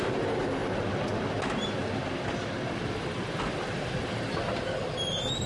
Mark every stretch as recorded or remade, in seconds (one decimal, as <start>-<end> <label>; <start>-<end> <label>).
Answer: 0.0-5.5 recorded